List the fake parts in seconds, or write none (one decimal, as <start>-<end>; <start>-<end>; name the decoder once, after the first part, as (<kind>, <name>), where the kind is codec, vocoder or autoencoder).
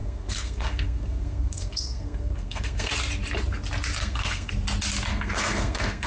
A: 0.0-2.9 (codec, SNAC); 4.0-4.5; 5.1-6.1